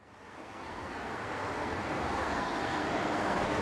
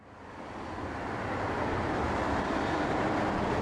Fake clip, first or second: first